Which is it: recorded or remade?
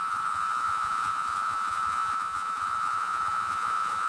remade